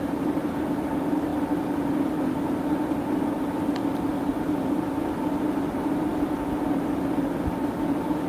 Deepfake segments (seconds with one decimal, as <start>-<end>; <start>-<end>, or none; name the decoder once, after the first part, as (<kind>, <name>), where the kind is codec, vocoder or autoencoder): none